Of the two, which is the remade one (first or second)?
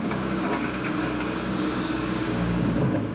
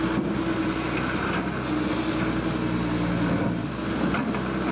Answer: first